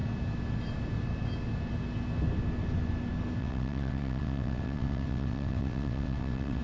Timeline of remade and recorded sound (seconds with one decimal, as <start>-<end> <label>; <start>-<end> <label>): 0.0-3.4 recorded; 3.4-6.6 remade